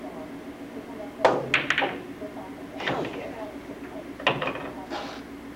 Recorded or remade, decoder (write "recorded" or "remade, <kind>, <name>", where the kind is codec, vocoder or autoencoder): recorded